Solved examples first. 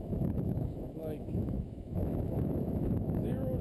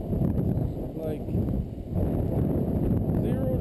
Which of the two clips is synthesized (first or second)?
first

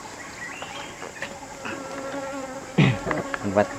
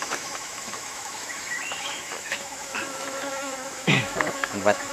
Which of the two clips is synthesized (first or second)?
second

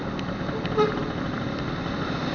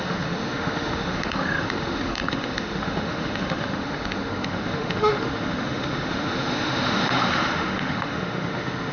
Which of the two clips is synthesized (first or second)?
second